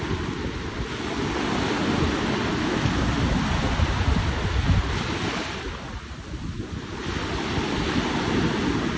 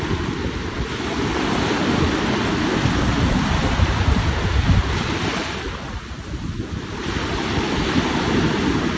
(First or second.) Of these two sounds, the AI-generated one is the second